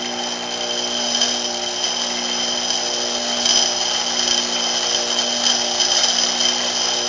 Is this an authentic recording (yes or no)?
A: yes